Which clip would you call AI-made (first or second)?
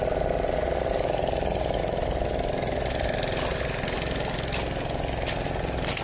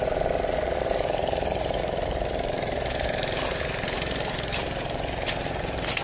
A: second